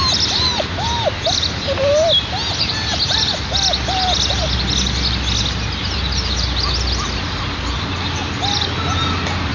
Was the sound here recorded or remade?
recorded